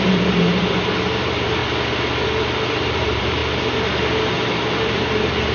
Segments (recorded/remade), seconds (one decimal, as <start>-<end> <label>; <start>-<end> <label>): 0.0-1.6 remade; 1.6-2.7 recorded; 2.7-3.4 remade; 3.4-4.2 recorded; 4.2-5.5 remade